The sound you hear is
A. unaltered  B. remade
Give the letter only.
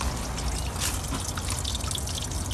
A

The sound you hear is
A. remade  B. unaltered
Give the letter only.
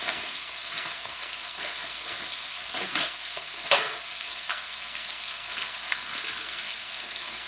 A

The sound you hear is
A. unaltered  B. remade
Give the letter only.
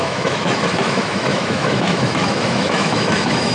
B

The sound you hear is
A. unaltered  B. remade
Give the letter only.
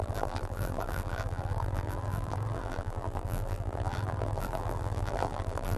B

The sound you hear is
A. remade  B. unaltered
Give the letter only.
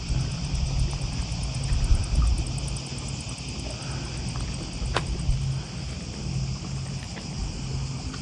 B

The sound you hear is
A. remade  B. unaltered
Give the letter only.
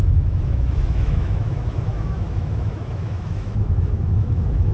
A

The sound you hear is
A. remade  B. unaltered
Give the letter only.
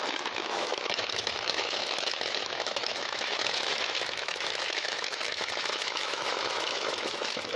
A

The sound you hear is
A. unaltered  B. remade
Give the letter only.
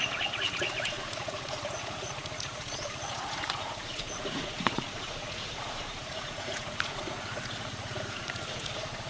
B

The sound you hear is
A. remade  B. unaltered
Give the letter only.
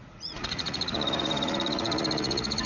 A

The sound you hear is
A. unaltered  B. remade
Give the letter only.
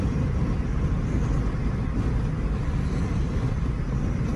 A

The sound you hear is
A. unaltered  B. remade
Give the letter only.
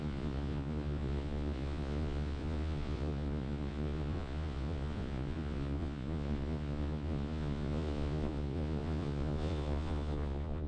B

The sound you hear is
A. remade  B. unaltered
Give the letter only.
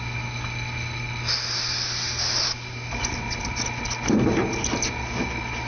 B